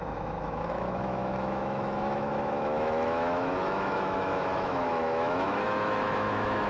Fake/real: fake